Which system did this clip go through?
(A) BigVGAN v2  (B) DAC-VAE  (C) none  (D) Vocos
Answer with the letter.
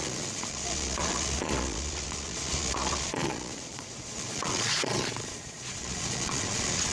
D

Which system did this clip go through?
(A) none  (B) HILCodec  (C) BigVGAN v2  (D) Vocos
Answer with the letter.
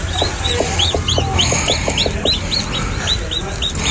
A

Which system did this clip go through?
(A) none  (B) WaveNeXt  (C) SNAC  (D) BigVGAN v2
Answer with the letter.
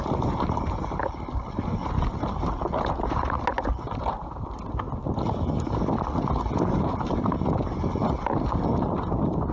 A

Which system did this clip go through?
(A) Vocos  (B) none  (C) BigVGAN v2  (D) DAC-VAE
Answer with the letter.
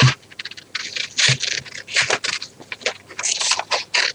B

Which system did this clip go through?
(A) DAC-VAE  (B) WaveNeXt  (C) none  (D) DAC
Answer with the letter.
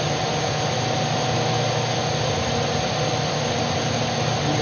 C